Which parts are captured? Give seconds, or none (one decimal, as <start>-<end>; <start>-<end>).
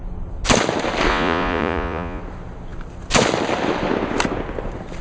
0.0-1.1; 2.2-5.0